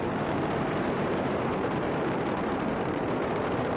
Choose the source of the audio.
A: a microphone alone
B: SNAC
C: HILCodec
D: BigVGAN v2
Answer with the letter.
D